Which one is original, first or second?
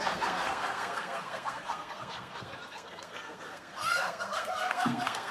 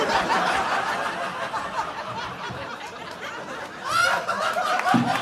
second